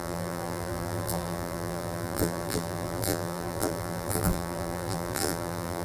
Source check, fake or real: fake